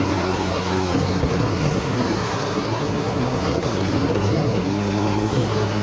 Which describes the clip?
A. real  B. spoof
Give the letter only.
B